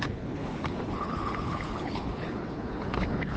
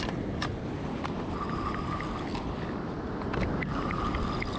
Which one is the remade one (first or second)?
first